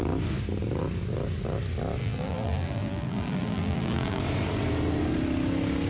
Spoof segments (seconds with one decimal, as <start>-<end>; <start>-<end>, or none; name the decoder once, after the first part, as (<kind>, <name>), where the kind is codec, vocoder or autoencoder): 2.0-4.2 (vocoder, BigVGAN v2)